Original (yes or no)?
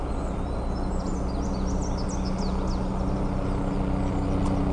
yes